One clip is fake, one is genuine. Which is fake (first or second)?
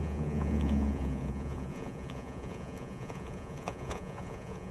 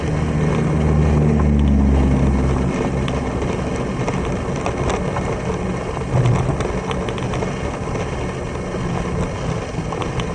first